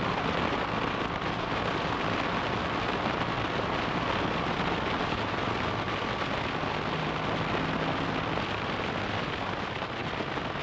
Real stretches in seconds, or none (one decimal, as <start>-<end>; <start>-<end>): 0.0-10.6